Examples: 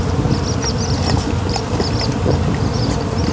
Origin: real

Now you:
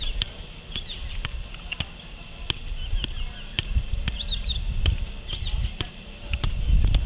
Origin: real